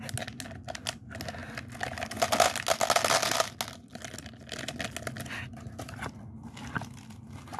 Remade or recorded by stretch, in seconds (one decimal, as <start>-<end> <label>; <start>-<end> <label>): 0.0-7.6 recorded